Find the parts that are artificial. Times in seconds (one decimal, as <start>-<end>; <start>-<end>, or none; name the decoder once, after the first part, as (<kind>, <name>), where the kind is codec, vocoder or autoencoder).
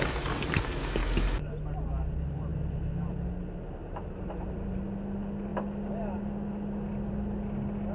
2.5-3.1 (vocoder, BigVGAN v2); 3.8-4.8